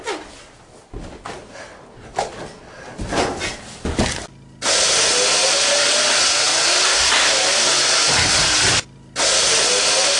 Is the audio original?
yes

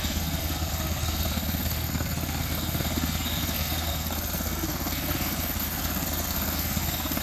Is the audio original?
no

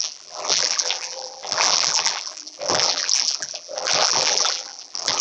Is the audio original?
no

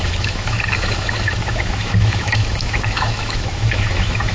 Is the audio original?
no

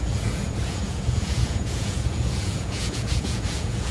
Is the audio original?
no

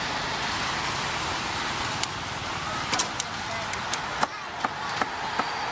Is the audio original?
yes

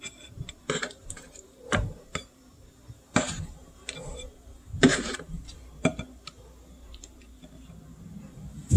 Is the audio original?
no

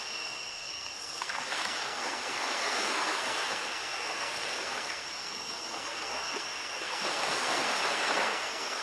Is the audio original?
no